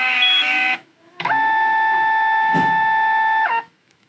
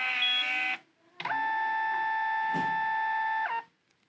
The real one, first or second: second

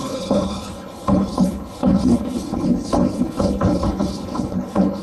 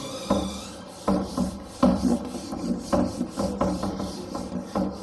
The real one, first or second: second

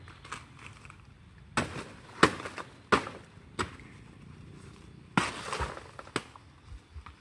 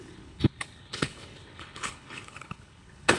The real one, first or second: first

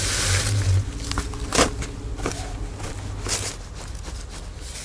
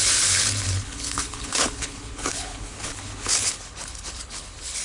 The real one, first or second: first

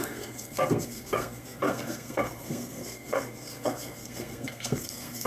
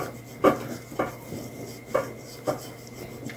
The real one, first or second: second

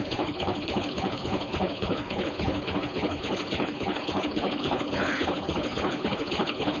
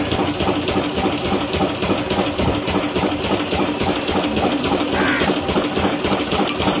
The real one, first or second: second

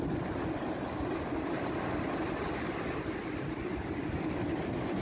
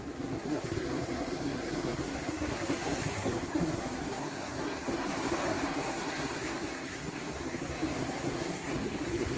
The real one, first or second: first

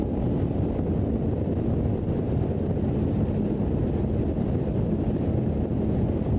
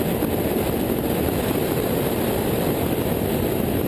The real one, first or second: first